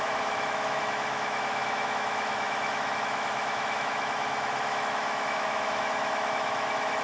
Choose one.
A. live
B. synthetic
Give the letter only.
B